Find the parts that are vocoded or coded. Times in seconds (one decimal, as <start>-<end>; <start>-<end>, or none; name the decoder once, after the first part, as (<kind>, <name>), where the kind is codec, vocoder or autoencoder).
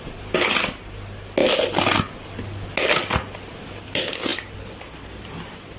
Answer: none